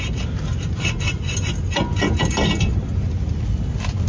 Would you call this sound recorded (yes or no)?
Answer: yes